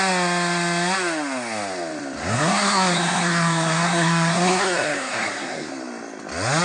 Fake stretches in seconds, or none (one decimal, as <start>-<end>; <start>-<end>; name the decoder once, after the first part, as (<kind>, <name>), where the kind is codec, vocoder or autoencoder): 2.2-5.7 (codec, SNAC)